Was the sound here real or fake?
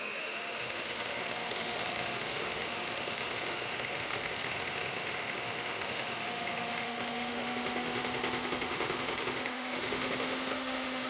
fake